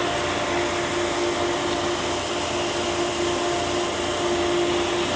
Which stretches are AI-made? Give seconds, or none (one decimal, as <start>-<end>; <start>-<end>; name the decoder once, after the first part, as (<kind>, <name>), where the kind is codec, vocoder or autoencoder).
none